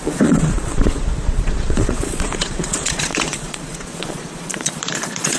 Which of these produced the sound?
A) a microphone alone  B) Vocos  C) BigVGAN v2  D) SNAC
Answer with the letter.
B